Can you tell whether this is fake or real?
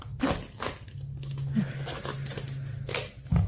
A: real